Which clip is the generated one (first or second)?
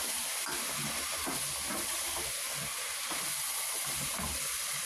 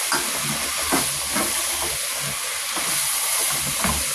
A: first